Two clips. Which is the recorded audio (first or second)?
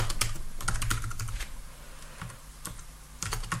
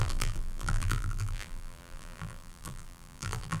first